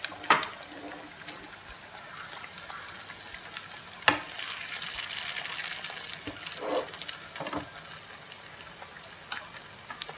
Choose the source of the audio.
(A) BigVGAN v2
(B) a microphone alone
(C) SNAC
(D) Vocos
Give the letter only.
B